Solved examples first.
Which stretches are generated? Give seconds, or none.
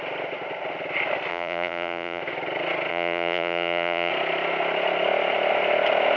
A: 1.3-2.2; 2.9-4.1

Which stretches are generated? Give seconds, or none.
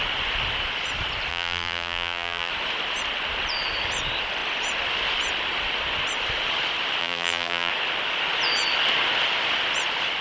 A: 1.3-2.5; 7.0-7.7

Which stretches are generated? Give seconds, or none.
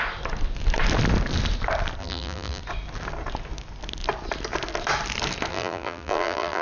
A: 2.0-2.6; 5.5-6.6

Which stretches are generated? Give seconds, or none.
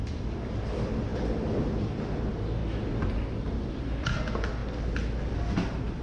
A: 0.0-2.6; 3.3-4.6; 5.3-6.0